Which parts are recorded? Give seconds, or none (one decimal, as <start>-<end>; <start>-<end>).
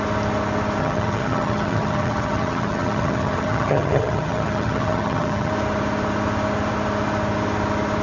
0.0-0.8; 5.5-8.0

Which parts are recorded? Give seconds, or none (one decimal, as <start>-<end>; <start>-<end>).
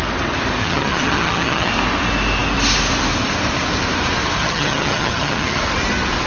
0.0-0.6; 1.7-4.4; 5.6-6.3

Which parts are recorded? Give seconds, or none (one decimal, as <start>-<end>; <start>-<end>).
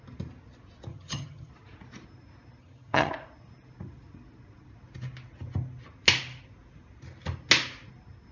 0.0-0.9; 1.5-2.6; 3.1-8.3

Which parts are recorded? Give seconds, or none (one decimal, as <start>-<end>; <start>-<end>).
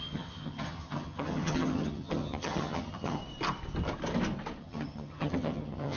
3.2-4.6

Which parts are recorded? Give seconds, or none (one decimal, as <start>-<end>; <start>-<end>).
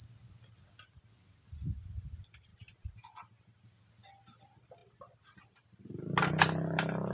0.0-7.1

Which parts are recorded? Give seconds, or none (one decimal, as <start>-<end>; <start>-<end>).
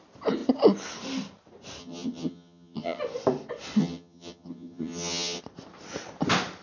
0.0-1.8; 3.0-3.8; 5.4-6.6